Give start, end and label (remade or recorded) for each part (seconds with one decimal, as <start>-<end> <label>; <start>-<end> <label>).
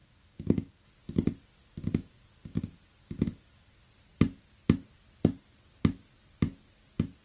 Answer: 0.0-7.2 recorded